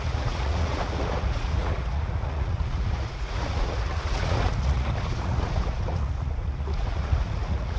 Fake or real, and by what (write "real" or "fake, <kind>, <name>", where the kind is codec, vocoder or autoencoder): fake, vocoder, Vocos